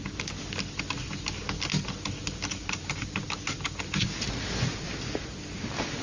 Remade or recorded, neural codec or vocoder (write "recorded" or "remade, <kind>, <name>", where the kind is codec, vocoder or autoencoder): recorded